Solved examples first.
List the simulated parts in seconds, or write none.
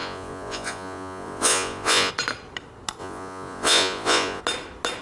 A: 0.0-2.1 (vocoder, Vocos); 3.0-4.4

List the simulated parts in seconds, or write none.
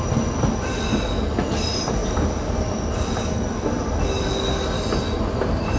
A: none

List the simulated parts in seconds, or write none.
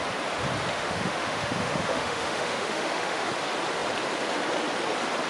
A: 0.7-3.3 (autoencoder, DAC-VAE)